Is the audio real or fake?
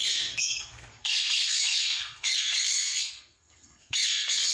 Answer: fake